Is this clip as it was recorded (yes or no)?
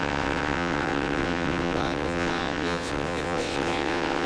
no